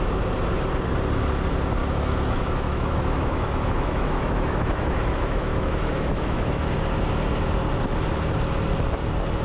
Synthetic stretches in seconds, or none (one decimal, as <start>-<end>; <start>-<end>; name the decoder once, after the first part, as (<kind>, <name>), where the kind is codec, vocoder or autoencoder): 1.8-6.7 (autoencoder, DAC-VAE)